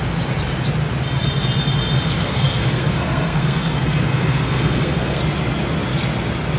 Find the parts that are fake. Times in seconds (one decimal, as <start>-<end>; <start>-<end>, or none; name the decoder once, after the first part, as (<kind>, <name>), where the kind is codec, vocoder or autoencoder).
2.2-5.2 (codec, SNAC)